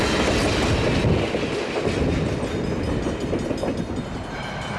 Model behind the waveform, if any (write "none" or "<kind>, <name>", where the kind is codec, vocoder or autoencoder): none